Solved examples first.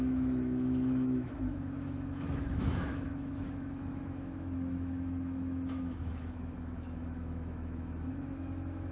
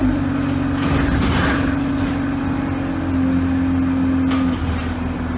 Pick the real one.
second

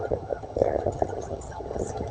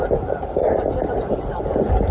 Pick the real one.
second